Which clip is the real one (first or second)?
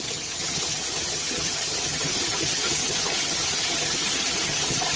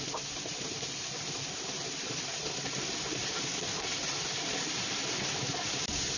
second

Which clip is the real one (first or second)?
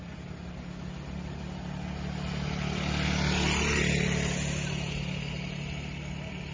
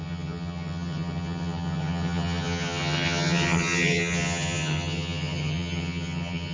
first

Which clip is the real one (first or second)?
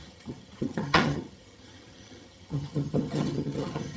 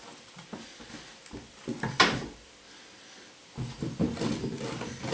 second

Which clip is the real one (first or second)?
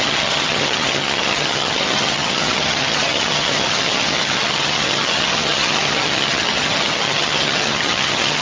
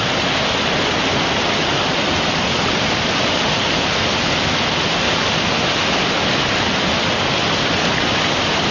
second